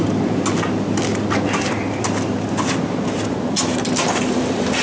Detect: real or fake real